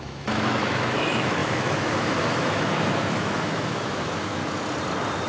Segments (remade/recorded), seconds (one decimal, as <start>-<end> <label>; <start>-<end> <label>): 0.0-4.4 remade; 4.4-5.3 recorded